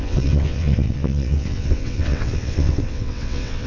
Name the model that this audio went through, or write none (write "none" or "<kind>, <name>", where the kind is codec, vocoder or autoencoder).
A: vocoder, WaveNeXt